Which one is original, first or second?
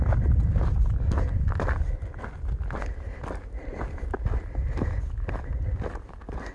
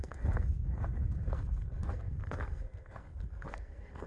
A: first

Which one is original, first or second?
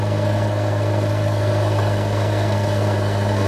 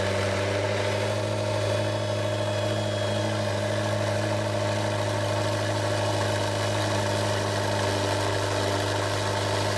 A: second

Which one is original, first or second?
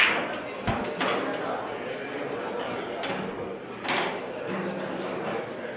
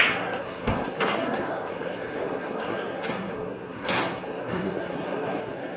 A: first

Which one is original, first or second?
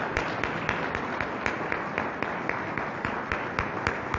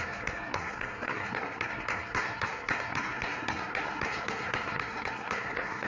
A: first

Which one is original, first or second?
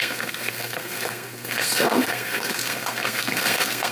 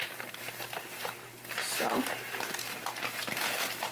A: second